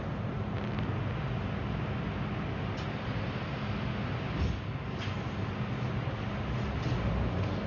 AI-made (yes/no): no